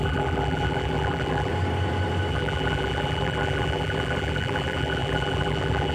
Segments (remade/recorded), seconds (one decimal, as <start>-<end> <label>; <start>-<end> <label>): 0.0-1.5 remade; 1.5-2.3 recorded; 2.3-5.9 remade